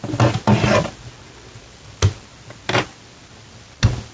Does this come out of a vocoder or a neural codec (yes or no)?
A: no